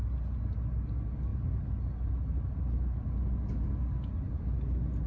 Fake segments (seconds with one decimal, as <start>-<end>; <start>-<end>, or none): none